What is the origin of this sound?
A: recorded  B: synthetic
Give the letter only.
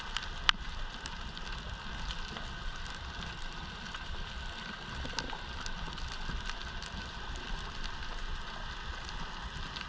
A